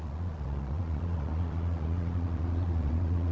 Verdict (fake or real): fake